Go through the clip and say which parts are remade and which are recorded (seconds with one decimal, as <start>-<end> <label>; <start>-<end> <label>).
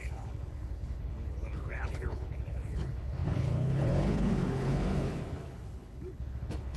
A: 0.0-6.8 remade